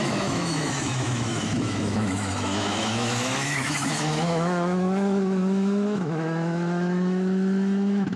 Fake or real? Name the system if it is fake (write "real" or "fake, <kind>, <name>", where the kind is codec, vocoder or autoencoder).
fake, autoencoder, DAC-VAE